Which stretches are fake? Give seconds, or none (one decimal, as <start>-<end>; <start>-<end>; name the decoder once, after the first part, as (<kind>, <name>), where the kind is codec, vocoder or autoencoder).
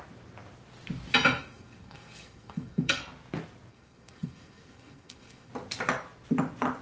1.4-3.0 (codec, SNAC); 3.7-5.5